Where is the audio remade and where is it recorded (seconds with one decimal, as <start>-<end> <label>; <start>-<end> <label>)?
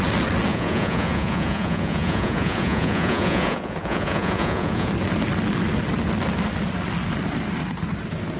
0.0-0.5 recorded; 0.5-4.9 remade; 4.9-8.4 recorded